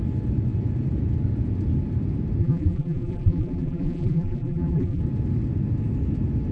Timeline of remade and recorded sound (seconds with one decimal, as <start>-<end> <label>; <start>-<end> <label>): 0.0-2.4 recorded; 2.4-5.0 remade; 5.0-6.5 recorded